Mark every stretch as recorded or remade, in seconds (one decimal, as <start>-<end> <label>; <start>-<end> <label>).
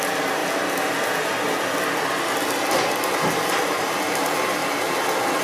0.0-0.4 remade; 0.4-3.6 recorded; 3.6-4.6 remade; 4.6-5.4 recorded